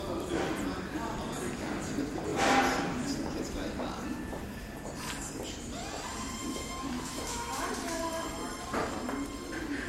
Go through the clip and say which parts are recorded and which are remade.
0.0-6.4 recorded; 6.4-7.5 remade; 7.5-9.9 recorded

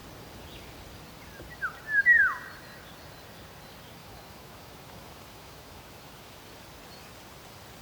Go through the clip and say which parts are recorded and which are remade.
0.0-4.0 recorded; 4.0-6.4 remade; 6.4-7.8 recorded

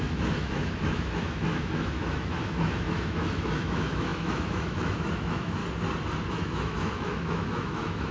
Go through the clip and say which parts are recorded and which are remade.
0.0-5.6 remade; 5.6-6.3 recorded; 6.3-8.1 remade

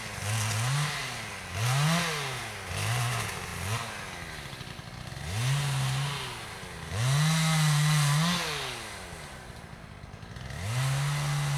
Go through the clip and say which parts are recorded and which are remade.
0.0-11.6 recorded